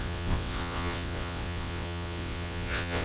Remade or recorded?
remade